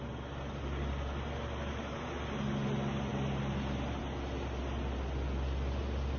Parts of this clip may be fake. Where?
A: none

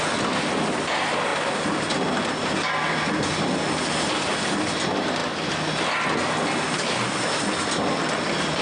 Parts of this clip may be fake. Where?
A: none

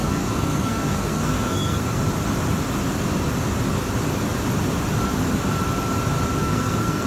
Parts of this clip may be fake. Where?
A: 0.0-2.0 (codec, SNAC); 6.4-7.1

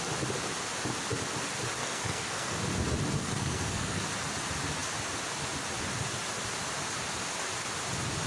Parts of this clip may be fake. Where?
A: 1.8-2.6 (codec, SNAC); 3.2-4.0

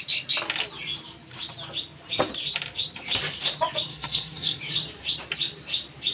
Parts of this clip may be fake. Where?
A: 3.9-4.6 (codec, SNAC)

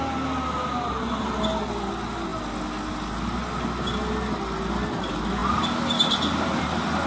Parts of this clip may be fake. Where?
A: none

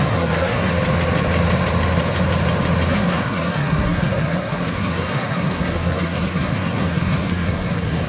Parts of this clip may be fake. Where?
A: 0.0-0.7 (codec, SNAC); 2.9-8.1